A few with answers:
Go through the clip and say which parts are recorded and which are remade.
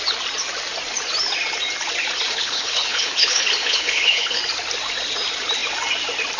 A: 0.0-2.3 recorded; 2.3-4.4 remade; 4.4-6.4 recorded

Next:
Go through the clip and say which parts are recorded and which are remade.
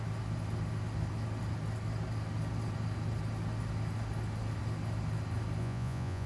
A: 0.0-5.6 recorded; 5.6-6.3 remade